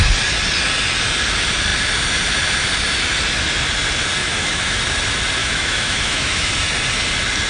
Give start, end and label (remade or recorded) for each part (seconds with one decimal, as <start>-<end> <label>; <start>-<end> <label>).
0.0-4.2 recorded; 4.2-4.8 remade; 4.8-5.4 recorded; 5.4-6.5 remade; 6.5-7.5 recorded